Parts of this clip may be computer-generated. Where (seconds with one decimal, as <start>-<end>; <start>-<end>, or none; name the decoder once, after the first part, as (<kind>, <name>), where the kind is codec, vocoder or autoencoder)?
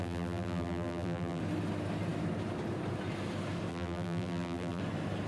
0.0-1.4 (vocoder, BigVGAN v2); 3.7-4.8